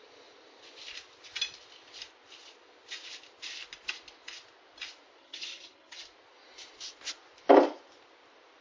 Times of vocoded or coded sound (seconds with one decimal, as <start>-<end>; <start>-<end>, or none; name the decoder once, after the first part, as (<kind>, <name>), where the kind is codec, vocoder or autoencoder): 5.2-6.0 (vocoder, HiFi-GAN)